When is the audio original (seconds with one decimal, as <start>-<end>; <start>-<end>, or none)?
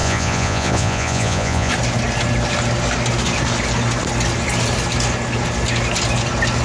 1.7-6.6